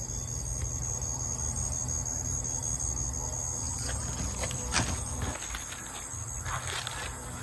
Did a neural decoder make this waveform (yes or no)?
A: no